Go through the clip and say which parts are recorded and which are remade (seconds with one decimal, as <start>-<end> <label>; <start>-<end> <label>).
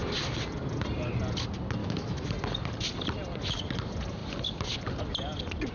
0.0-1.8 recorded; 1.8-2.3 remade; 2.3-5.7 recorded